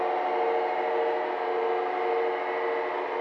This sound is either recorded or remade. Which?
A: recorded